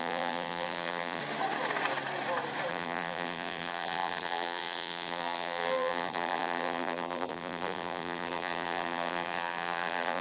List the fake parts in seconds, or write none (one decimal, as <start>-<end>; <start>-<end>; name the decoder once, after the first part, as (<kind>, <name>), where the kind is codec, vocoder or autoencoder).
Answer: 0.0-1.2 (vocoder, BigVGAN v2); 2.7-10.2